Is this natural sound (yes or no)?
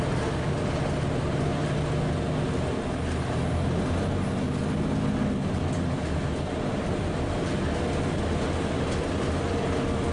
yes